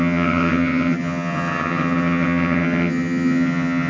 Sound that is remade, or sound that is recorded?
remade